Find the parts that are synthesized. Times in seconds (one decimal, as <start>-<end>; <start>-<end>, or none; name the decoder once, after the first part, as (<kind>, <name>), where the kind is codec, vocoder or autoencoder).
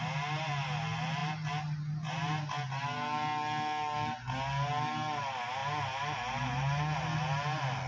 none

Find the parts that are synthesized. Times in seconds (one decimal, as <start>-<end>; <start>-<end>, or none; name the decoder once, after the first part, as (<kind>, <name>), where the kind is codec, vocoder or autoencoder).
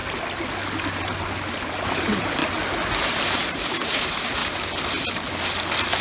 0.9-2.4 (vocoder, BigVGAN v2); 3.0-4.4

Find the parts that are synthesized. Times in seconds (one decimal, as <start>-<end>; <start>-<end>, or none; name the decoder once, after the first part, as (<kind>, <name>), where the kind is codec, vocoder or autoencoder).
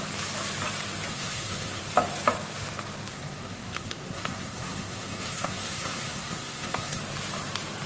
1.1-1.8 (codec, SNAC); 3.1-7.0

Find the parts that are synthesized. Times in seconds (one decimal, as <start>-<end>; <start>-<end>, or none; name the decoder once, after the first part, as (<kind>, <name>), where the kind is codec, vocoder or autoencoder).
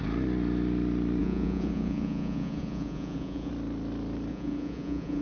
1.2-3.5 (vocoder, Vocos); 4.3-5.2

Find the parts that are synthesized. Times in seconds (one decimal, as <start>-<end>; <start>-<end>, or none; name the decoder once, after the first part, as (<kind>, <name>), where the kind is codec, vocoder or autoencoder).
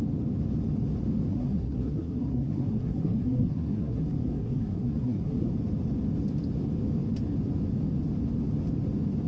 1.3-5.5 (codec, SNAC)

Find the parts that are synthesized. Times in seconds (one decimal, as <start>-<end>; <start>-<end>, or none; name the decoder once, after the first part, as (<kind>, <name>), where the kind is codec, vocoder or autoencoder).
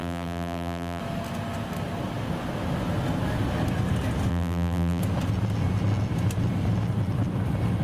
0.0-1.0 (vocoder, BigVGAN v2); 4.3-5.0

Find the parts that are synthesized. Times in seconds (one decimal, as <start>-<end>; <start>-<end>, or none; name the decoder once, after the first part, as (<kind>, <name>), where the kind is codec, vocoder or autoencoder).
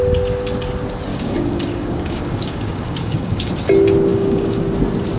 1.1-3.5 (codec, DAC); 4.1-4.7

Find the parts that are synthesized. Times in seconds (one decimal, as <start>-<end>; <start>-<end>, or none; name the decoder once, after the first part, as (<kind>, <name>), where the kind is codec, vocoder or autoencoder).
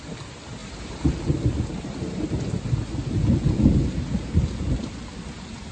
none